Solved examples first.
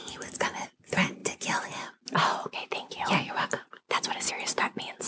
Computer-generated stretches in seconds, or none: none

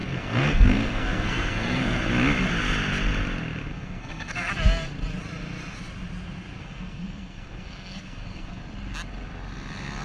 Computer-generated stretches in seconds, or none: 0.0-2.0 (codec, SNAC); 3.7-4.5; 6.6-8.6

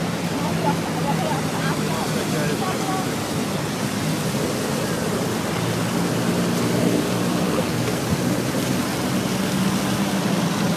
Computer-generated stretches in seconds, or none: 7.3-8.0 (codec, SNAC)

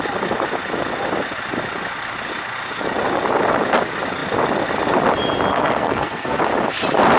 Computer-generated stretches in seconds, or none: 5.5-6.4 (codec, SNAC)